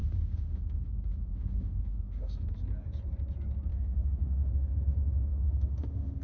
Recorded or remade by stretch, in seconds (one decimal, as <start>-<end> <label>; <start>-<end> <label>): 0.0-2.5 remade; 2.5-3.7 recorded; 3.7-4.5 remade; 4.5-5.3 recorded; 5.3-6.2 remade